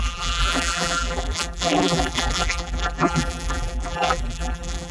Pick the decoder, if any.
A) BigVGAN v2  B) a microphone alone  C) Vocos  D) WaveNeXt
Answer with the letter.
A